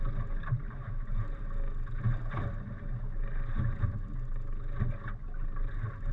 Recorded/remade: recorded